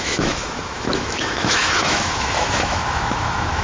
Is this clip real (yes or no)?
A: no